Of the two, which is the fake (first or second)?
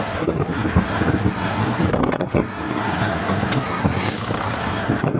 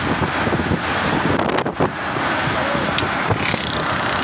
first